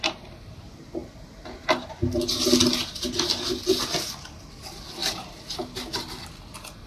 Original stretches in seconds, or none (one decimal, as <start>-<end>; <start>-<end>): 0.0-6.9